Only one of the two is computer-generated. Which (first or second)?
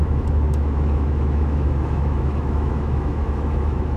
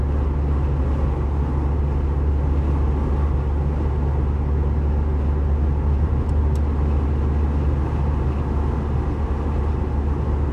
first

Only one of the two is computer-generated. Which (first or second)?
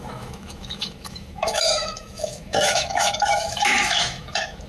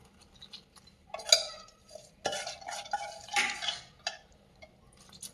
first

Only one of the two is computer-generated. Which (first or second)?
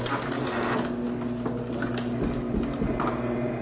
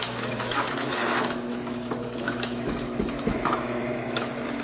second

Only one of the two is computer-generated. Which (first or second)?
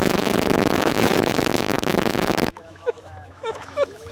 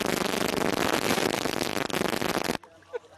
first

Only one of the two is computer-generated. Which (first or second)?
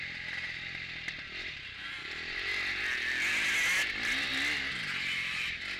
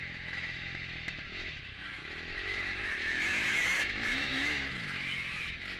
second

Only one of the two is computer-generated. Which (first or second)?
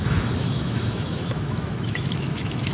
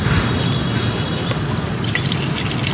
first